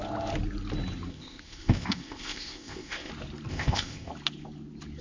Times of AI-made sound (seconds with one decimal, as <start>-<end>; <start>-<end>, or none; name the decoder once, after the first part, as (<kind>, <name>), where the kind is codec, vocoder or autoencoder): 1.1-3.1 (codec, ZipCodec); 3.5-4.1